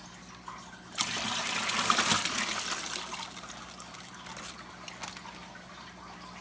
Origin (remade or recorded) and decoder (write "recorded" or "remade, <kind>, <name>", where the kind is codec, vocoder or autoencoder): recorded